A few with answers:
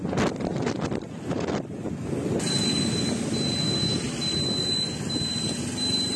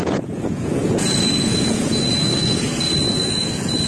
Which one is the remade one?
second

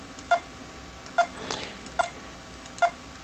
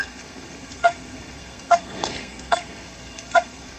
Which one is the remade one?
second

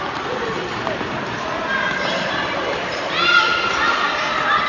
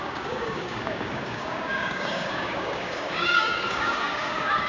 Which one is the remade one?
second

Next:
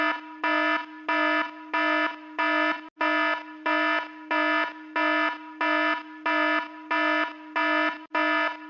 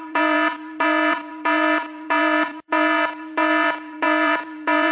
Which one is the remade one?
second